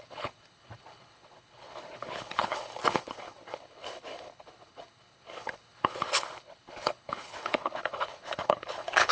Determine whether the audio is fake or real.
fake